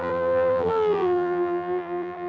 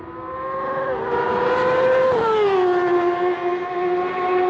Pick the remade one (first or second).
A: first